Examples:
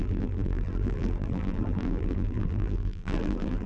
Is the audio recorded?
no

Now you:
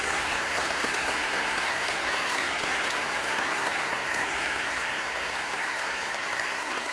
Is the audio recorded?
no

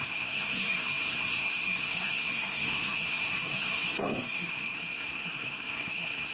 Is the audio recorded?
no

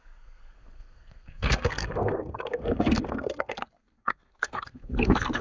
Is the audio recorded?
no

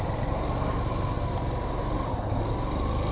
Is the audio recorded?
yes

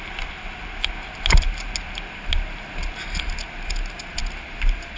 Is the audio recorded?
yes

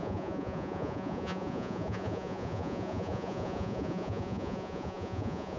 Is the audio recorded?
no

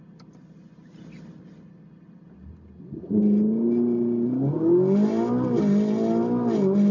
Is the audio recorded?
yes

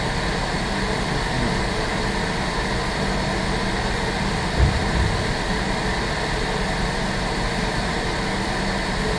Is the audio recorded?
yes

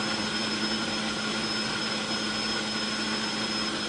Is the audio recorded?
yes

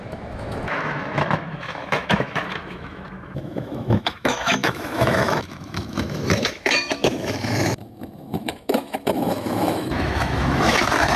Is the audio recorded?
no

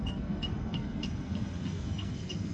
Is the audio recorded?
no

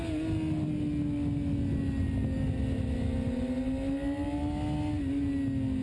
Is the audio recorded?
yes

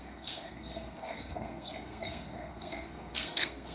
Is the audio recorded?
no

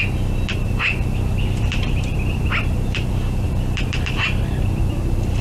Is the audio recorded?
no